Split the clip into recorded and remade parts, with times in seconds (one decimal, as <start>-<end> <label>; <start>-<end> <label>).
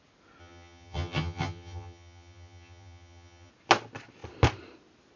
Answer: 0.0-0.4 recorded; 0.4-3.5 remade; 3.5-5.2 recorded